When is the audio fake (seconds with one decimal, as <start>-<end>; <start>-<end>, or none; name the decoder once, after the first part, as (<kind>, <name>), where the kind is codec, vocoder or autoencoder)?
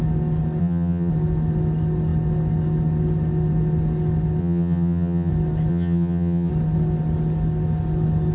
0.6-1.1 (vocoder, HiFi-GAN); 4.4-5.3; 5.7-6.5